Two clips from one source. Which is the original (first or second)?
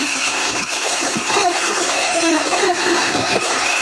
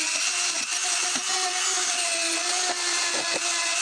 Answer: second